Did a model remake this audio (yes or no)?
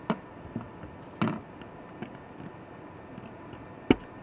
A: no